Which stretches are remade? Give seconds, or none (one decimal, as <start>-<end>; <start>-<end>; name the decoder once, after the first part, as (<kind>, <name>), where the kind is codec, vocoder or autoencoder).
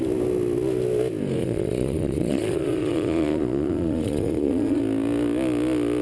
1.4-4.8 (vocoder, Vocos)